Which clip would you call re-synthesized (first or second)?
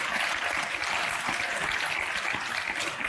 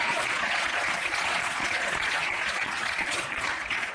second